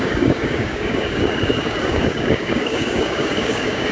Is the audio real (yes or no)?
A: no